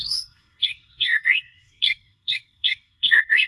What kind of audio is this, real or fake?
fake